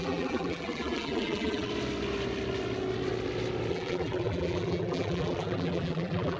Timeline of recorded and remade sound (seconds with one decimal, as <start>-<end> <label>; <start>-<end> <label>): 0.0-1.7 remade; 1.7-3.7 recorded; 3.7-6.4 remade